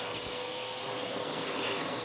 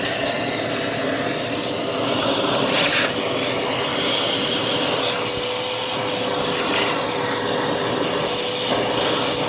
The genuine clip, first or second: second